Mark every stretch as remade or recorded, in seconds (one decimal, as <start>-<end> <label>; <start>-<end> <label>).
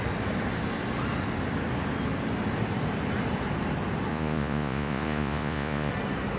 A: 0.0-4.1 recorded; 4.1-5.9 remade; 5.9-6.4 recorded